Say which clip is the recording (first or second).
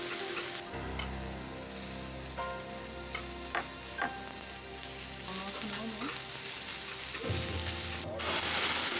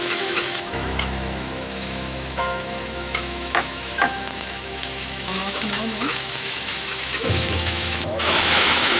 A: first